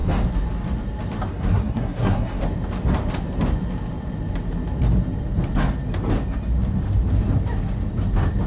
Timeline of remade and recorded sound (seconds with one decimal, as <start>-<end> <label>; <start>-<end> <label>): 0.0-1.3 recorded; 1.3-2.4 remade; 2.4-8.5 recorded